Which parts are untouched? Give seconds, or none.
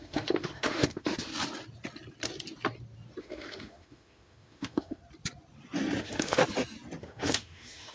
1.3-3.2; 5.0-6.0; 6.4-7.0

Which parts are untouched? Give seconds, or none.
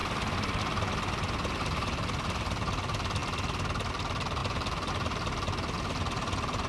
0.6-6.7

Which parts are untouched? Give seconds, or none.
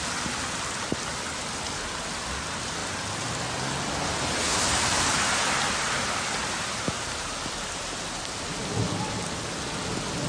0.0-10.3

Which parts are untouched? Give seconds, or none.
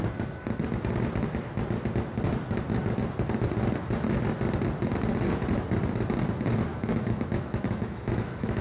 0.0-6.7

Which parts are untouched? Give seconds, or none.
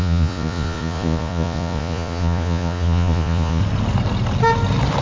3.6-5.0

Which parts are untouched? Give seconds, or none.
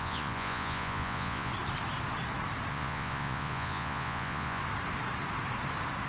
1.5-2.7; 4.6-6.1